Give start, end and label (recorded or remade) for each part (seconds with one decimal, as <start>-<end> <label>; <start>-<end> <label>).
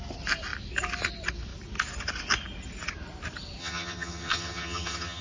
0.0-3.6 recorded; 3.6-5.2 remade